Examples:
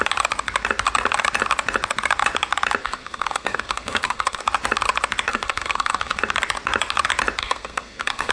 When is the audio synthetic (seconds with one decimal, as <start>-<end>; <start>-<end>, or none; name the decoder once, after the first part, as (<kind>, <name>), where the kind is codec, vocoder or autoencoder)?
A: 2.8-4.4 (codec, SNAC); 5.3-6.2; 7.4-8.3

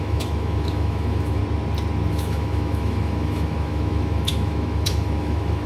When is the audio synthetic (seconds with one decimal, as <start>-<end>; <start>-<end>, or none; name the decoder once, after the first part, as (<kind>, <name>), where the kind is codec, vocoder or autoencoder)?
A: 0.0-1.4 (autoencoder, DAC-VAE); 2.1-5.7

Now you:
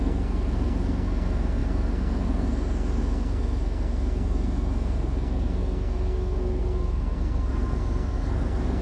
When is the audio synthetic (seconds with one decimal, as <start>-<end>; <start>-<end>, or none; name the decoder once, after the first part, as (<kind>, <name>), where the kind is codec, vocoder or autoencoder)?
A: 0.0-8.8 (codec, SNAC)